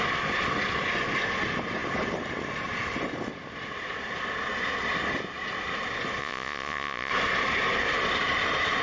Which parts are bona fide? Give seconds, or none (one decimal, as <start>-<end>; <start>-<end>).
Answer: 0.0-6.2; 7.1-8.8